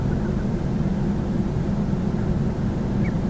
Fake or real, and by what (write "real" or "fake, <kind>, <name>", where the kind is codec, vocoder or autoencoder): real